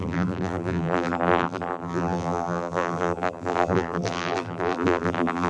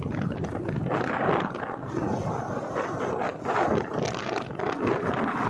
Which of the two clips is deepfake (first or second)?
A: first